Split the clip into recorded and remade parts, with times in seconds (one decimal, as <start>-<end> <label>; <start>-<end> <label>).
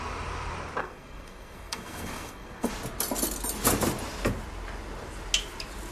0.0-0.8 recorded; 0.8-2.7 remade; 2.7-5.9 recorded